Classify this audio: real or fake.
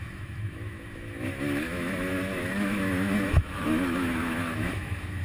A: fake